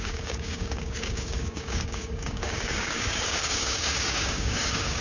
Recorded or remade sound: remade